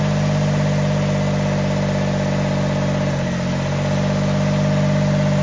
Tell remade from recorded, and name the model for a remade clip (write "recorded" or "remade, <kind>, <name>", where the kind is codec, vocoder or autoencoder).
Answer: recorded